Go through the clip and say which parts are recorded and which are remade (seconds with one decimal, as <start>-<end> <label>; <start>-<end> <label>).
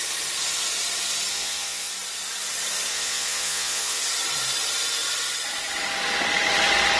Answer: 0.0-1.3 recorded; 1.3-1.9 remade; 1.9-2.9 recorded; 2.9-4.0 remade; 4.0-7.0 recorded